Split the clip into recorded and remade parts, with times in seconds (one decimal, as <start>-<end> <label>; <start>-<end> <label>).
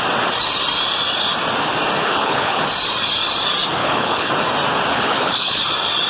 0.0-2.0 recorded; 2.0-2.6 remade; 2.6-3.8 recorded; 3.8-4.3 remade; 4.3-4.9 recorded; 4.9-5.6 remade; 5.6-6.1 recorded